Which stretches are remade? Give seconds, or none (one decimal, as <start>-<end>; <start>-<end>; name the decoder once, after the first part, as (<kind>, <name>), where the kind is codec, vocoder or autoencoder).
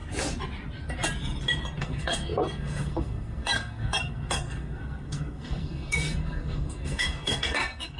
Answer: 1.8-8.0 (codec, SNAC)